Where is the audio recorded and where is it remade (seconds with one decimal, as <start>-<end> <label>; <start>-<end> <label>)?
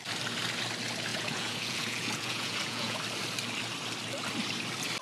0.0-1.1 recorded; 1.1-3.0 remade; 3.0-5.0 recorded